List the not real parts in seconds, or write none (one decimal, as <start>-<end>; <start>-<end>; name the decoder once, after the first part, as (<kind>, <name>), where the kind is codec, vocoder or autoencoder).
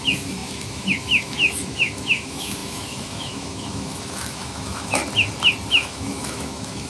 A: 0.0-5.0 (autoencoder, DAC-VAE); 5.7-6.9